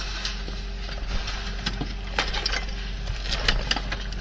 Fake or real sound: real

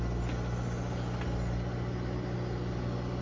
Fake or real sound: real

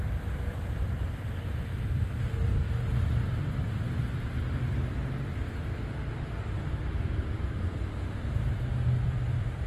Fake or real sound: fake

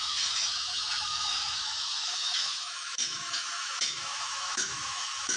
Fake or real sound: fake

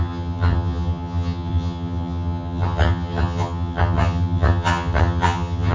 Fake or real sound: fake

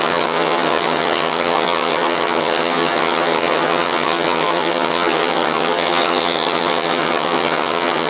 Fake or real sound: fake